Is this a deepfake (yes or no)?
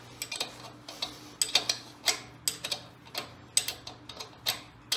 no